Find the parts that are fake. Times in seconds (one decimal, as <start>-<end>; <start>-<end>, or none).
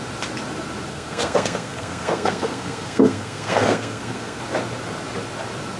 0.9-4.4